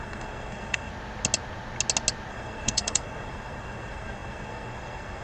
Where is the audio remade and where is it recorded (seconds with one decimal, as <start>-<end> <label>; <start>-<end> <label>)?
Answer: 0.0-0.9 remade; 0.9-2.3 recorded; 2.3-5.2 remade